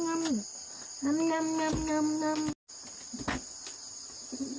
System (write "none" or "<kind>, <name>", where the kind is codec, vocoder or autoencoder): none